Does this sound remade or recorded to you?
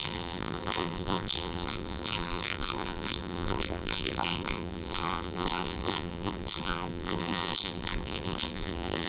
remade